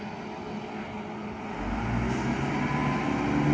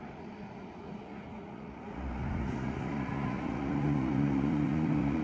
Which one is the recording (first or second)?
first